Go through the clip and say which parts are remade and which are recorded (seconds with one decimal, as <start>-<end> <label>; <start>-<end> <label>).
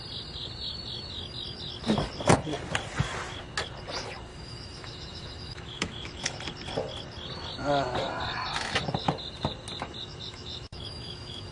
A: 0.0-4.3 recorded; 4.3-6.4 remade; 6.4-10.2 recorded; 10.2-11.5 remade